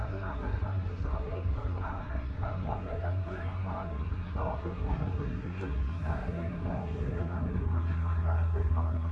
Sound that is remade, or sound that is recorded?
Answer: remade